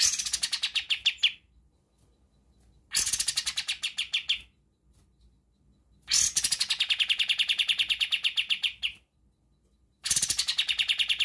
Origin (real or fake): real